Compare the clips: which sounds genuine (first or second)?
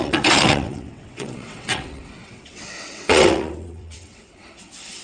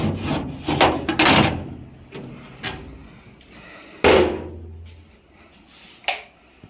second